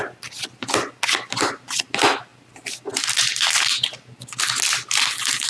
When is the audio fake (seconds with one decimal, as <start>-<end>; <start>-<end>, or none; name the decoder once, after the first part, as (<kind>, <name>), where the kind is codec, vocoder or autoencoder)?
none